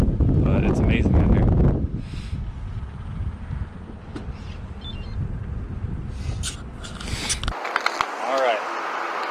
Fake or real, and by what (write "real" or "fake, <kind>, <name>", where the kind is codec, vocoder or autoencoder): real